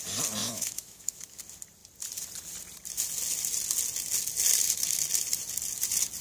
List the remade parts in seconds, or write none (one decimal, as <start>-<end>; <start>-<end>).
0.4-1.4